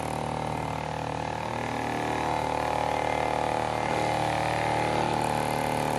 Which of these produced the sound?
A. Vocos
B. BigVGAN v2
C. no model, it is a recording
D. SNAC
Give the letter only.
C